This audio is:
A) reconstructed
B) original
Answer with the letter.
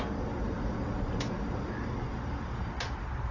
B